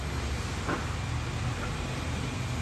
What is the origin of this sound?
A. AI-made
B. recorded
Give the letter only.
B